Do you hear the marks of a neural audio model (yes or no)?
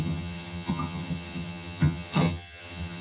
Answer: yes